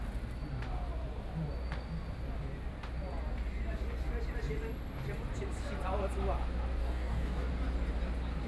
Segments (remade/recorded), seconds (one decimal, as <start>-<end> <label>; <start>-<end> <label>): 0.0-6.8 recorded; 6.8-7.5 remade; 7.5-8.5 recorded